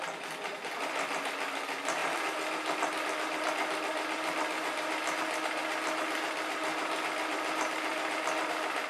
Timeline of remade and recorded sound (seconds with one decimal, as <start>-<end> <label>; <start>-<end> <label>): 0.0-8.9 recorded